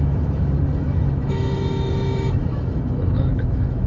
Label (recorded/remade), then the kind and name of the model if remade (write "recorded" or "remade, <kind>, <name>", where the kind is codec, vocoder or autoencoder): remade, autoencoder, DAC-VAE